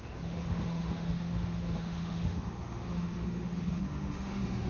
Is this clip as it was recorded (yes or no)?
no